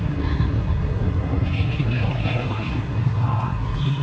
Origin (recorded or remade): remade